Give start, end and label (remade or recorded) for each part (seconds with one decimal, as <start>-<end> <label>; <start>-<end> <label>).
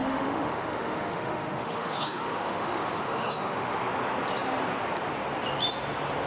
0.0-3.8 remade; 3.8-6.3 recorded